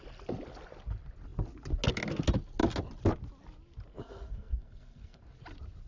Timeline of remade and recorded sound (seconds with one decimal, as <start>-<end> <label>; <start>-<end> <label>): 0.0-3.9 recorded; 3.9-5.2 remade; 5.2-5.9 recorded